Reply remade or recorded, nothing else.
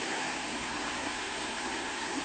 remade